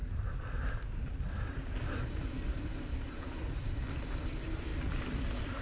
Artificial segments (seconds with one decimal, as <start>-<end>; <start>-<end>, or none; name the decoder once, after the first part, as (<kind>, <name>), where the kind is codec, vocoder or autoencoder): none